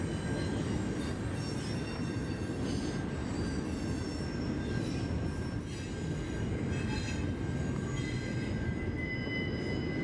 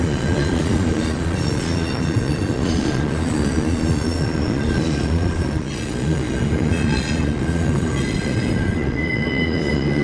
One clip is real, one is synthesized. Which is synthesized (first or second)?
second